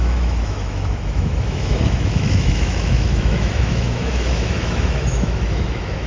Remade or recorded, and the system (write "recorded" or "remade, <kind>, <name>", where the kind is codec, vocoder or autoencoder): remade, autoencoder, DAC-VAE